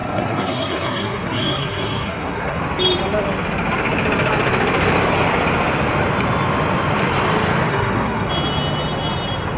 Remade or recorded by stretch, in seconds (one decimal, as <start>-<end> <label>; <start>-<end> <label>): 0.0-2.6 remade; 2.6-7.7 recorded; 7.7-8.3 remade; 8.3-9.6 recorded